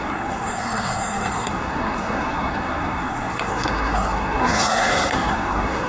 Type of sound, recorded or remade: remade